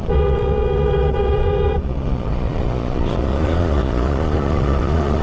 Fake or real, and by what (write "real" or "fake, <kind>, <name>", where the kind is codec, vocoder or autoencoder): fake, vocoder, Vocos